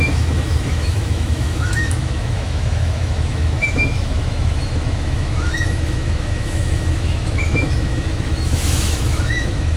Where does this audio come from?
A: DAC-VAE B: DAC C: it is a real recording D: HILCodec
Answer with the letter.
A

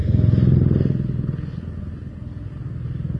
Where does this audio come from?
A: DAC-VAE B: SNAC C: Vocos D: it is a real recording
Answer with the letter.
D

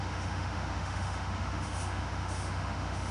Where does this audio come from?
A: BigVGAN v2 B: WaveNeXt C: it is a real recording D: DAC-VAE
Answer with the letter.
D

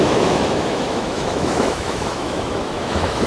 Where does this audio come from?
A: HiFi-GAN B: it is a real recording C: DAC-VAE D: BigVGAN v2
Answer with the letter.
C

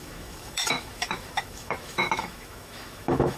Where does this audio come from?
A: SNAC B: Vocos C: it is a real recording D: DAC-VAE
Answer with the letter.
D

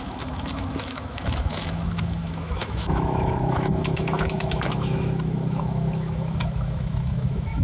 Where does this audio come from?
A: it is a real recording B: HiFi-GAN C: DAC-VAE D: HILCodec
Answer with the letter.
C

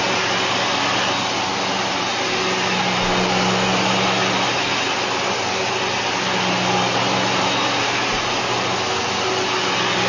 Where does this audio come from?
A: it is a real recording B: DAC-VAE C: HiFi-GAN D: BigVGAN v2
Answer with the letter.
A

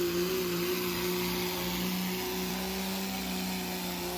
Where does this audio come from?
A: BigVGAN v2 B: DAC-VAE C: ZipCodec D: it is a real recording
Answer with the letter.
D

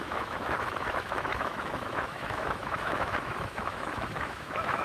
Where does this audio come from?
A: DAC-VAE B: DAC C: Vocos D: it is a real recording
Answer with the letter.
A